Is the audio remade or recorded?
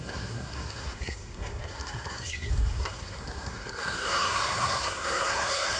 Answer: remade